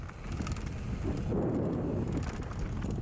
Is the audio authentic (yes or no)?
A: yes